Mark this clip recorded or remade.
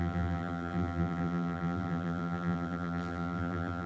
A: remade